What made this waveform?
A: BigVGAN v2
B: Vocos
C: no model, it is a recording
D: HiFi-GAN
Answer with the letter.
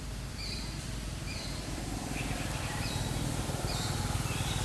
A